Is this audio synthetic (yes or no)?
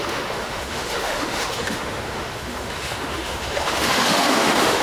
yes